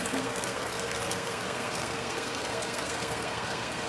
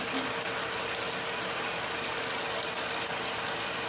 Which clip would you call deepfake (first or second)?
first